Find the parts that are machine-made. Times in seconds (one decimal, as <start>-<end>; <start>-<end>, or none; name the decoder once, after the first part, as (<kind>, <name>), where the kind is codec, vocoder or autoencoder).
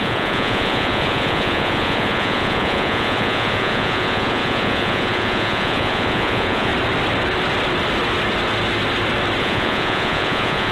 0.0-6.7 (vocoder, Vocos); 9.4-10.7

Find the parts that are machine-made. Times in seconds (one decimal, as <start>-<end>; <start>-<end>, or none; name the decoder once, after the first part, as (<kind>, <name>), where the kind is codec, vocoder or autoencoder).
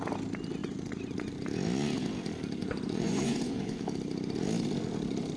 0.6-1.3 (vocoder, Vocos); 2.6-3.8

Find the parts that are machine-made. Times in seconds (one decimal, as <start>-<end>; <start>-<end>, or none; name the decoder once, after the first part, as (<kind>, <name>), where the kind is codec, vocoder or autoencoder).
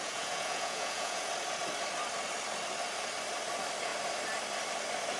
0.0-1.3 (vocoder, Vocos)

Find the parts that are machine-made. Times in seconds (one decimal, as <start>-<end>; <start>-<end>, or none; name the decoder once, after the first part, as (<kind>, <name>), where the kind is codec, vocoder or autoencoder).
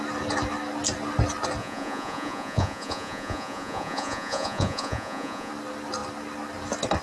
1.6-5.5 (vocoder, Vocos)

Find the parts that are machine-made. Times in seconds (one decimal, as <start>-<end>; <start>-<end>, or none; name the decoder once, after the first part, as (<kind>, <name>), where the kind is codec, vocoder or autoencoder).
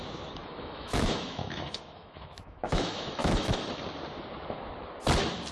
0.4-3.7 (autoencoder, DAC-VAE)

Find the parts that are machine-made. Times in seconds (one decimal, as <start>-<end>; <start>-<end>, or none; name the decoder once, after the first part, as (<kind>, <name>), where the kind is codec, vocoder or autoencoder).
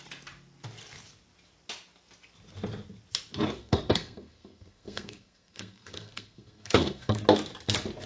3.6-7.2 (codec, SNAC)